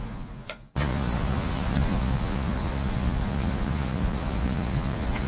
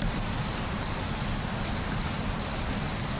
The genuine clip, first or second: second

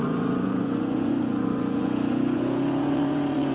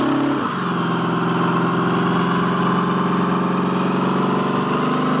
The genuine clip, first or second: second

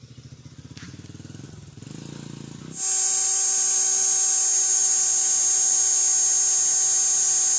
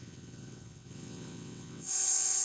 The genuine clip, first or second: first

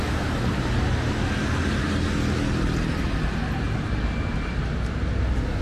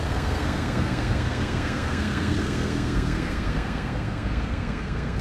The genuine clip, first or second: first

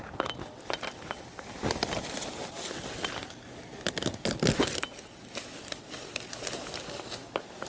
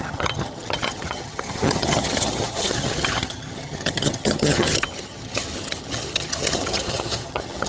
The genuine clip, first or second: first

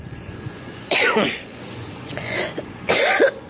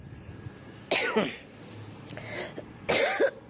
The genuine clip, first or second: second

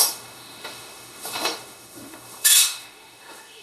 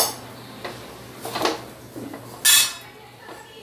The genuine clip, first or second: second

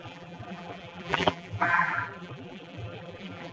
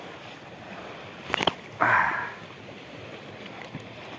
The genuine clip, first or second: second